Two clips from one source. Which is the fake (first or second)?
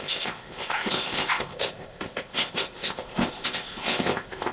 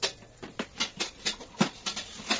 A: first